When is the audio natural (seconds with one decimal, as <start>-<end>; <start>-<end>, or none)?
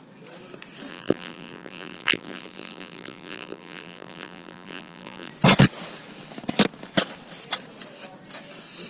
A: 0.0-0.9; 5.3-8.9